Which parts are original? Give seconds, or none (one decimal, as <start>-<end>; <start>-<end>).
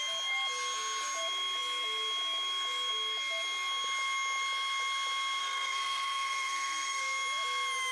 0.0-5.4; 7.0-7.9